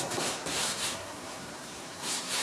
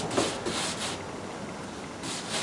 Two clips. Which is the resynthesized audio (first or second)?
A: first